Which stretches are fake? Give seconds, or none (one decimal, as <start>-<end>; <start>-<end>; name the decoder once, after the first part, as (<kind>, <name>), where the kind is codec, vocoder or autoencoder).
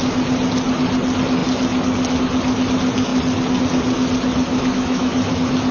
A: 4.5-5.3 (autoencoder, DAC-VAE)